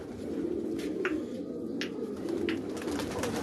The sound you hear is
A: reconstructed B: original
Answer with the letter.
B